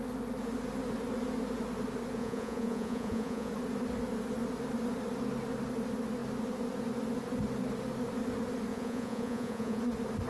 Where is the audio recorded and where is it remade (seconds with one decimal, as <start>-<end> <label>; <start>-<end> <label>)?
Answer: 0.0-2.2 recorded; 2.2-3.5 remade; 3.5-8.7 recorded; 8.7-9.8 remade; 9.8-10.3 recorded

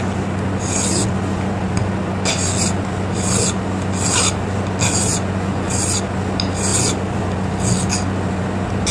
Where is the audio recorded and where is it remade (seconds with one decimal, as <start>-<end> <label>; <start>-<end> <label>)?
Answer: 0.0-5.1 recorded; 5.1-5.7 remade; 5.7-8.9 recorded